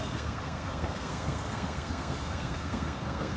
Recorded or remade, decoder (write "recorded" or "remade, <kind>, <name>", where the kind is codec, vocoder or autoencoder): remade, codec, SNAC